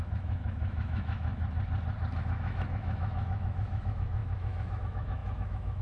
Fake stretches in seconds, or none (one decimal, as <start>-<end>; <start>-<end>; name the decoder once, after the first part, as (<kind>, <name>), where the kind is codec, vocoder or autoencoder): 0.0-1.3 (autoencoder, DAC-VAE); 2.2-5.8